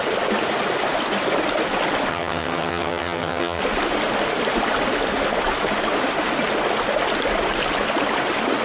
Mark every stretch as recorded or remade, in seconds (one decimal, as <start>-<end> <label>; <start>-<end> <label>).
0.0-2.1 recorded; 2.1-3.6 remade; 3.6-8.6 recorded